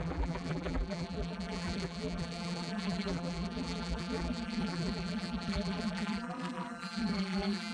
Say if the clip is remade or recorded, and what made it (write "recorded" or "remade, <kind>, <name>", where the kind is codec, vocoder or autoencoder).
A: remade, vocoder, BigVGAN v2